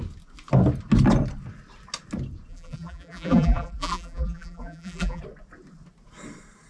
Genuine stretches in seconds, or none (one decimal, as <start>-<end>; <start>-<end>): 0.0-2.5; 5.2-6.7